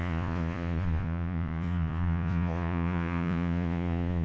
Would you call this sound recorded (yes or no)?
no